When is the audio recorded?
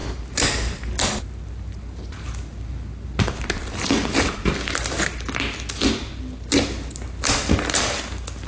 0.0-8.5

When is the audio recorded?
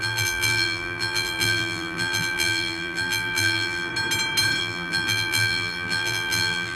3.9-4.6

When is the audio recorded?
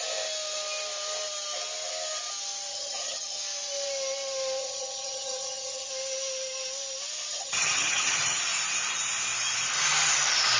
0.0-2.7; 3.4-4.6; 5.9-7.3; 8.4-10.6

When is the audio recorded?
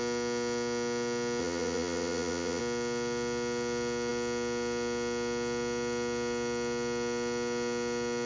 0.0-1.4; 2.6-8.3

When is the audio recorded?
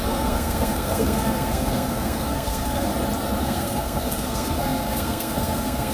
2.9-3.4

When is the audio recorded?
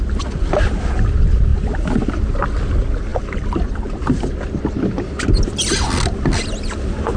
0.0-7.2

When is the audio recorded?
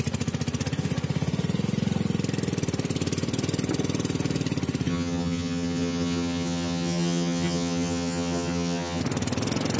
0.0-4.9; 9.0-9.8